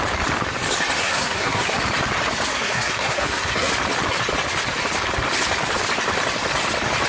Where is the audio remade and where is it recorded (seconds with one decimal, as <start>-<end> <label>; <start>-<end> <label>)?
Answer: 0.0-1.0 recorded; 1.0-1.8 remade; 1.8-2.5 recorded; 2.5-3.7 remade; 3.7-7.1 recorded